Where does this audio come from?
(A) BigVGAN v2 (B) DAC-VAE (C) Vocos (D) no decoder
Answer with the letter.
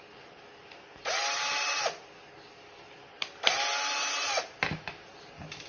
D